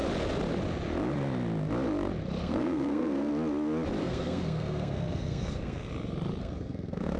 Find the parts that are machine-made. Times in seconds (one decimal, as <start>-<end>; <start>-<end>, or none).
2.4-3.3; 4.0-5.9; 6.4-7.2